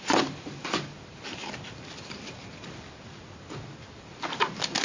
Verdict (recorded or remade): recorded